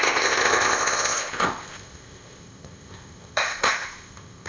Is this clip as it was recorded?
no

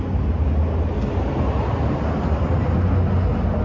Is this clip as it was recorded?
yes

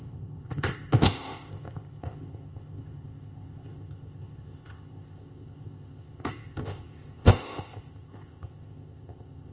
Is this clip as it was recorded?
no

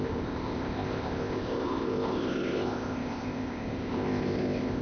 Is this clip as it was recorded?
no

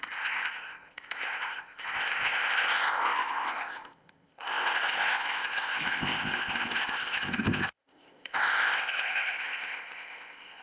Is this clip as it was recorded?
no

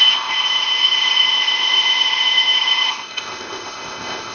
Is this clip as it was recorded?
no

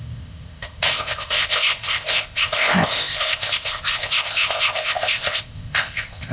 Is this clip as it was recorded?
no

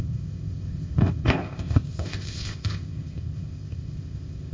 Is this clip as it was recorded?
no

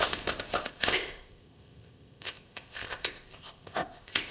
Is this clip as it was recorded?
no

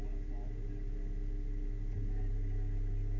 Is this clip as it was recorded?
yes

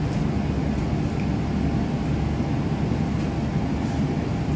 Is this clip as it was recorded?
yes